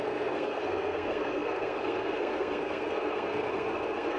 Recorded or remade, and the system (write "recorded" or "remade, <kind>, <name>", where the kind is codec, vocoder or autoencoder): remade, codec, SNAC